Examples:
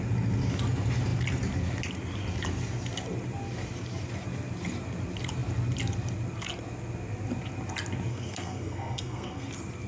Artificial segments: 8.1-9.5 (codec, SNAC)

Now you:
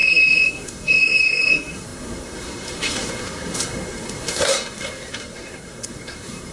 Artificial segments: 0.0-6.5 (codec, SNAC)

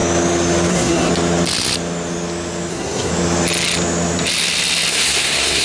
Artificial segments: 0.7-1.1 (codec, SNAC); 2.7-3.1; 4.9-5.6

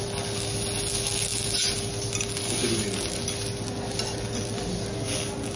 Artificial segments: none

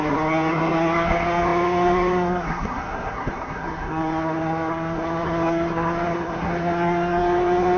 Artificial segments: 0.0-7.8 (codec, SNAC)

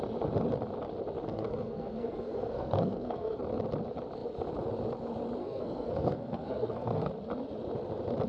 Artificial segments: 1.3-3.4 (codec, SNAC); 5.4-7.1